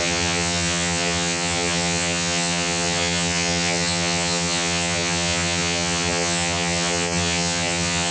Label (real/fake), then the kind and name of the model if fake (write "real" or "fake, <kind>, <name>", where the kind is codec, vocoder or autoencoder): fake, vocoder, HiFi-GAN